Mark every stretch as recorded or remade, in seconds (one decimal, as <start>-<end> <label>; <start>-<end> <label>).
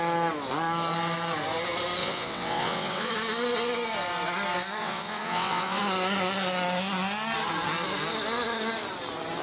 0.0-2.0 recorded; 2.0-3.1 remade; 3.1-4.8 recorded; 4.8-5.8 remade; 5.8-9.4 recorded